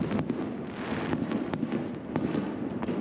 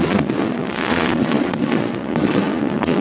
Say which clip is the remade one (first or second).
second